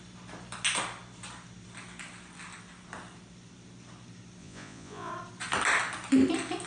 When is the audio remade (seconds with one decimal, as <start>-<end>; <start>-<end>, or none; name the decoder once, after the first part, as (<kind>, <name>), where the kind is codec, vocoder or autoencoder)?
4.4-5.1 (vocoder, Vocos)

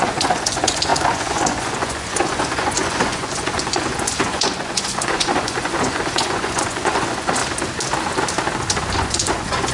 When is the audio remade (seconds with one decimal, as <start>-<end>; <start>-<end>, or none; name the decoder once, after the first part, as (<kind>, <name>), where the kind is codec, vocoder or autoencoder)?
0.0-7.4 (vocoder, Vocos); 8.7-9.7

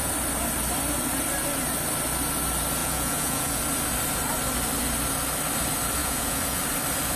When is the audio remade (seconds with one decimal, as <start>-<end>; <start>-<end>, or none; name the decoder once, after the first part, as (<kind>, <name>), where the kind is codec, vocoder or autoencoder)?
2.8-3.6 (vocoder, Vocos); 6.0-6.6

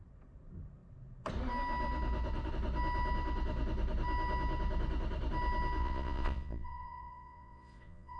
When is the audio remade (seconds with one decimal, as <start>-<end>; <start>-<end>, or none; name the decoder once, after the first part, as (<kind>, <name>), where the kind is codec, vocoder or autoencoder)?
5.8-8.2 (vocoder, Vocos)